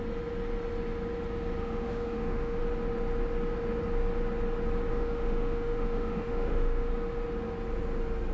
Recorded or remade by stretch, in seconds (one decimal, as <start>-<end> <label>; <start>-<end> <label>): 0.0-1.6 recorded; 1.6-2.6 remade; 2.6-4.9 recorded; 4.9-6.9 remade; 6.9-8.3 recorded